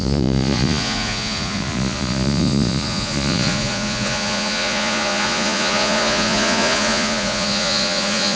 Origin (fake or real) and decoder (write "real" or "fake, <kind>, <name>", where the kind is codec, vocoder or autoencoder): fake, vocoder, Vocos